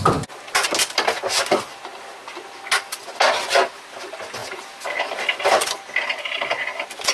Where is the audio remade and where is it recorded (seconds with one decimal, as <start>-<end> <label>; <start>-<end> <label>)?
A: 0.0-4.4 recorded; 4.4-5.2 remade; 5.2-7.1 recorded